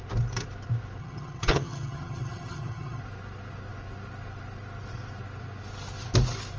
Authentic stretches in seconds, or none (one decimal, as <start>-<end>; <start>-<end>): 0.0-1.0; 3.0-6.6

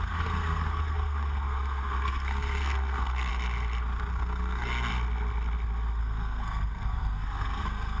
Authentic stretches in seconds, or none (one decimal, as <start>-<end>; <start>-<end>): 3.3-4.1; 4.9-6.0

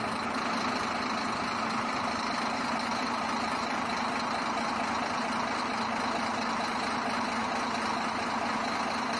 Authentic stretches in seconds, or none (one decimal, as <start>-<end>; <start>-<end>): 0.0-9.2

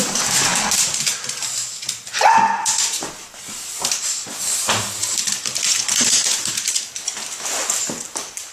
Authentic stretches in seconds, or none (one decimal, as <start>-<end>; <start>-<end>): 0.0-8.5

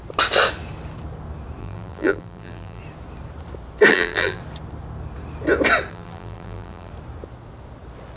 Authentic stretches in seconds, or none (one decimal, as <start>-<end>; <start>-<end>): 0.0-1.6; 2.8-3.9; 4.4-5.9; 6.9-8.2

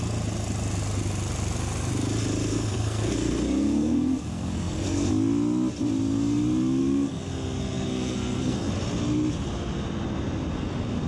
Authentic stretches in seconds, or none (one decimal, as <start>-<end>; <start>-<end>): 0.0-2.5; 5.1-6.8; 8.7-11.1

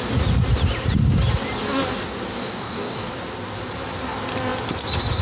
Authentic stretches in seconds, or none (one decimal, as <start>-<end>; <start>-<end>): 0.0-2.4; 3.1-5.2